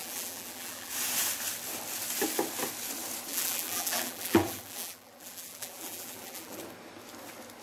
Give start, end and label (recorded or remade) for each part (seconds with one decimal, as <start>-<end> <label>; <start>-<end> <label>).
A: 0.0-0.9 remade; 0.9-3.3 recorded; 3.3-6.6 remade; 6.6-7.6 recorded